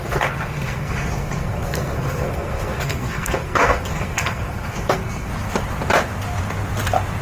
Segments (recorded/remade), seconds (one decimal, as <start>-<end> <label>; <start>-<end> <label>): 0.0-5.3 remade; 5.3-7.2 recorded